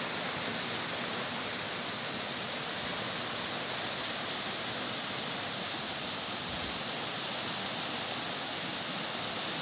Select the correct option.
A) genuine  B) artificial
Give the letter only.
A